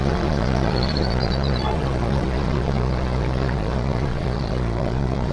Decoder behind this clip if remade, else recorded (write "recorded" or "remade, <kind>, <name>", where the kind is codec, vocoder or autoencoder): remade, vocoder, Vocos